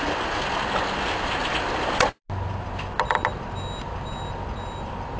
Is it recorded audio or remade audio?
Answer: recorded